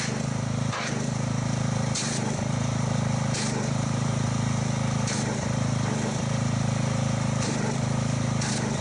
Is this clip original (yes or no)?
no